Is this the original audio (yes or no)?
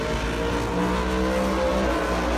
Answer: yes